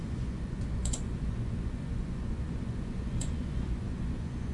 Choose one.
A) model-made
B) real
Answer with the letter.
A